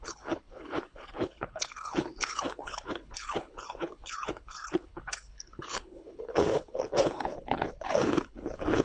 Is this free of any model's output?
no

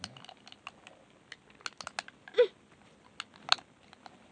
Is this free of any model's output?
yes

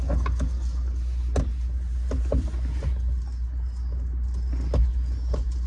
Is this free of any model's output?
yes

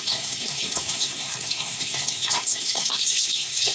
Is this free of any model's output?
no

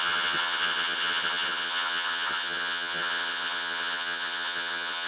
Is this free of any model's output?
no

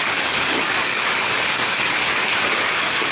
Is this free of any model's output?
no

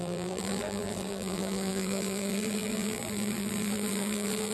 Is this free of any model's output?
no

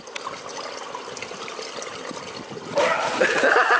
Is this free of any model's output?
yes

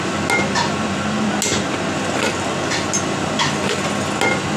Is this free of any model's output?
yes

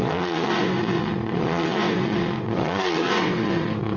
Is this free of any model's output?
no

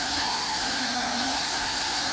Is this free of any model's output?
no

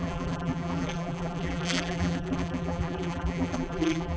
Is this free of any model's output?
no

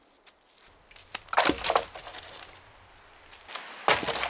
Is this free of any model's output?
yes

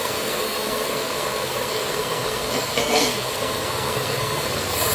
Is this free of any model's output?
no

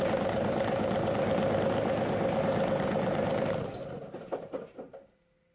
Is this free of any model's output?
yes